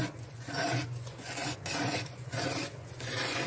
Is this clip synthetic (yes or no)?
yes